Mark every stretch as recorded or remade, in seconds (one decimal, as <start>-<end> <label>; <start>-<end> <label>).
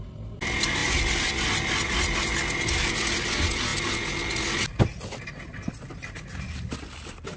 0.0-7.4 recorded